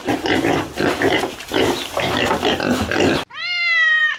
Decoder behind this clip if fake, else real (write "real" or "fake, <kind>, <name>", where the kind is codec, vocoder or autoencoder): fake, vocoder, BigVGAN v2